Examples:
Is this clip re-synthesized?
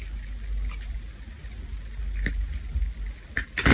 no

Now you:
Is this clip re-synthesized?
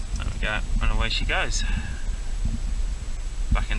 no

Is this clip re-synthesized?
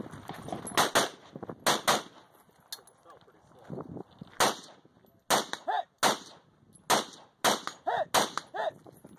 no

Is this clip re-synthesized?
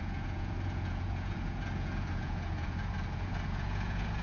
yes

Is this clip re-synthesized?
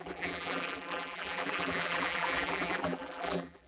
yes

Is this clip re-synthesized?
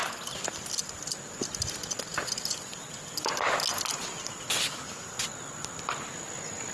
no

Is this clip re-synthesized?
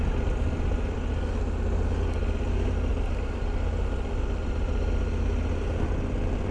no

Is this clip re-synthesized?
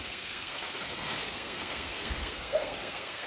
yes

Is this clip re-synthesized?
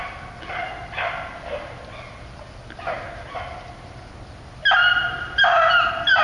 no